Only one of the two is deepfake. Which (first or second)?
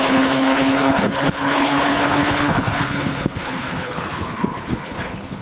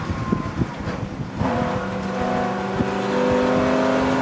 first